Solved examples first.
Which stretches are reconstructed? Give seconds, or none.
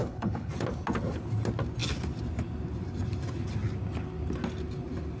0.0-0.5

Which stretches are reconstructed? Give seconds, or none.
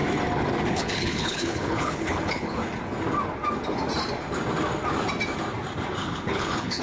0.7-2.6; 6.0-6.8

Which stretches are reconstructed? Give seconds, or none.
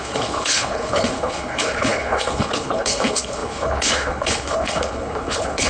0.0-5.7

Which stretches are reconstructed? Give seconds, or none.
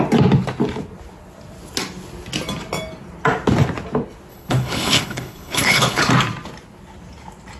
4.3-6.1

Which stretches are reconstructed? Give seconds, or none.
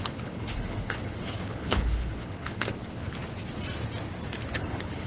0.0-3.2; 4.5-5.1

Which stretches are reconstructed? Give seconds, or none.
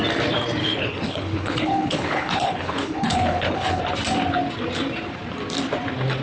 0.6-3.8